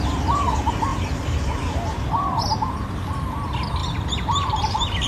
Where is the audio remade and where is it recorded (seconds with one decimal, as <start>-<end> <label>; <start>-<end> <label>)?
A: 0.0-3.8 recorded; 3.8-4.6 remade; 4.6-5.1 recorded